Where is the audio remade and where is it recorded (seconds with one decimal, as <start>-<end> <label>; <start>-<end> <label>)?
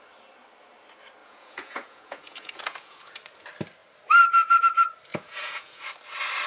0.0-1.2 recorded; 1.2-3.1 remade; 3.1-5.1 recorded; 5.1-5.8 remade; 5.8-6.5 recorded